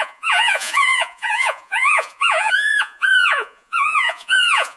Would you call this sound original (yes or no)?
no